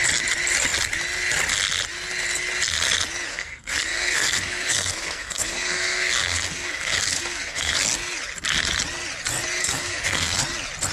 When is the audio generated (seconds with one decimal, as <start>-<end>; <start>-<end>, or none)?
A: 3.3-7.7; 9.6-10.4